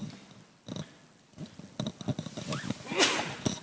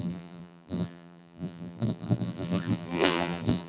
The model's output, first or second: second